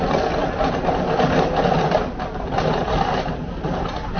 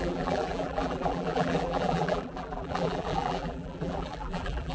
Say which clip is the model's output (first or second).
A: second